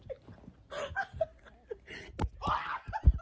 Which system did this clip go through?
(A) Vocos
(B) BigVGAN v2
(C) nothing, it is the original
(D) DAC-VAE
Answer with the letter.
C